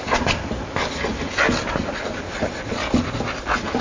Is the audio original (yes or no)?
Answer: yes